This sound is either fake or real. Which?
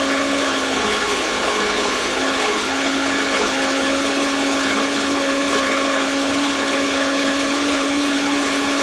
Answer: fake